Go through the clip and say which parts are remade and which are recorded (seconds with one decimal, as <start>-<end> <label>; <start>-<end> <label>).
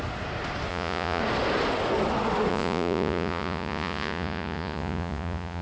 0.0-0.7 recorded; 0.7-1.2 remade; 1.2-2.5 recorded; 2.5-5.6 remade